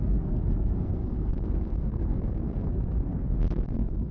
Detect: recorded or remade remade